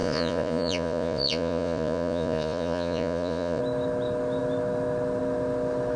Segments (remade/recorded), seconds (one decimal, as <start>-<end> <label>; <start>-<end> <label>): 0.0-3.6 remade; 3.6-6.0 recorded